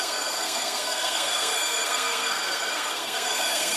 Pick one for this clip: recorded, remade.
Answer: remade